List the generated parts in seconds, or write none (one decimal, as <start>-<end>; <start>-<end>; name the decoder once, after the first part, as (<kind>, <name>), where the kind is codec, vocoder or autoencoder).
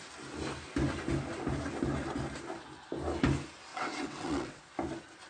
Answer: 3.7-4.6 (vocoder, WaveNeXt)